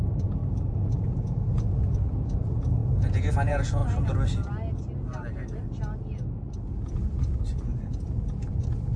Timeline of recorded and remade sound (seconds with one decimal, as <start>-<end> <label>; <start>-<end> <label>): 0.0-3.8 remade; 3.8-9.0 recorded